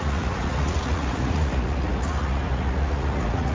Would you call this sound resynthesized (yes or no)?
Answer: yes